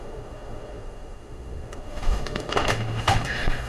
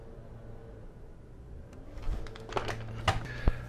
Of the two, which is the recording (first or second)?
second